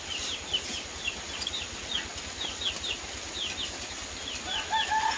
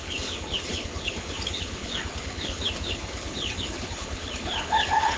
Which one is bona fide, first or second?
first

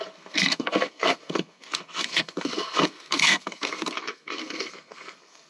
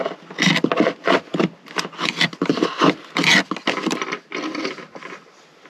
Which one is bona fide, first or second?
second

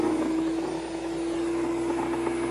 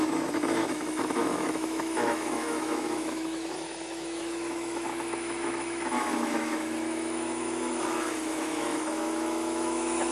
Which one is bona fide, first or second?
first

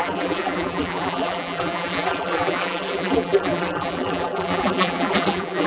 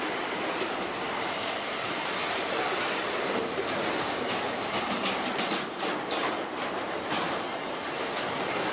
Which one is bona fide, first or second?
second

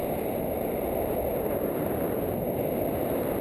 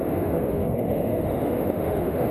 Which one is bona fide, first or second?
first